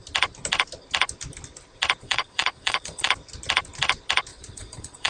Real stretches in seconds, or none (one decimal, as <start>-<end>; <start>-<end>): 0.0-2.0; 3.1-4.3